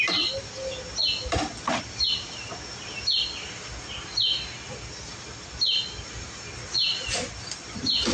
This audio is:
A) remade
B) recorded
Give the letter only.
B